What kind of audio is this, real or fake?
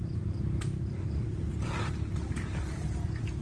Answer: fake